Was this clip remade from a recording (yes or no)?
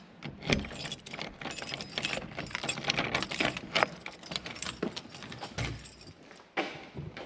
no